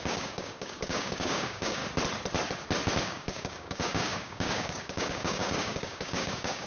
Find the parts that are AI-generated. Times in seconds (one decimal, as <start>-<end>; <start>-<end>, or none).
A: 0.0-1.8; 3.0-6.7